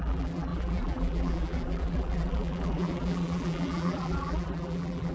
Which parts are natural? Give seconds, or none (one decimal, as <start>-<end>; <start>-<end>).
none